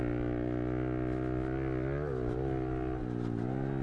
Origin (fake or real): real